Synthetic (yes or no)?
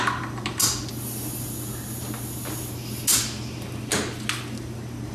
no